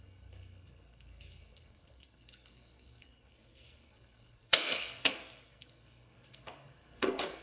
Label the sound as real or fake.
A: fake